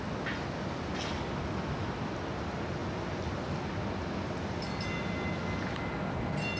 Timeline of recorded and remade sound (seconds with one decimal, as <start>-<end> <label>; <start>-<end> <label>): 0.0-6.6 recorded

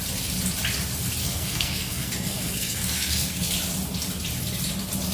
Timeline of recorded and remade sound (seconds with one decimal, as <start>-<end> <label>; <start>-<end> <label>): 0.0-1.2 recorded; 1.2-3.5 remade; 3.5-5.1 recorded

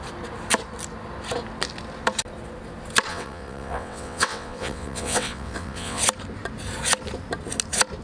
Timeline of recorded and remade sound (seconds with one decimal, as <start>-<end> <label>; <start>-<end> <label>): 0.0-3.1 recorded; 3.1-6.0 remade; 6.0-8.0 recorded

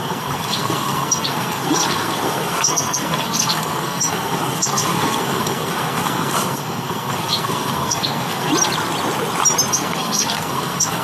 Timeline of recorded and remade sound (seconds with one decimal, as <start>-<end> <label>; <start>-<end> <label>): 0.0-8.5 remade; 8.5-9.7 recorded; 9.7-11.0 remade

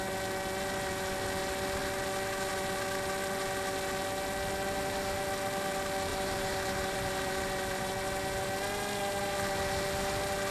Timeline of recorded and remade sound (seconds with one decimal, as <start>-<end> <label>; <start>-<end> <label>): 0.0-6.1 recorded; 6.1-7.9 remade; 7.9-10.5 recorded

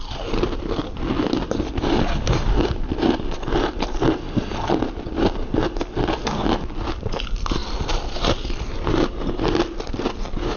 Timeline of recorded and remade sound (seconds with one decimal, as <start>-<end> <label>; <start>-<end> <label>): 0.0-10.6 recorded